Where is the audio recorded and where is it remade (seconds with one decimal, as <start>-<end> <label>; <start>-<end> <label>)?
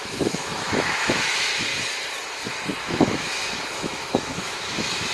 0.0-1.7 remade; 1.7-2.8 recorded; 2.8-5.1 remade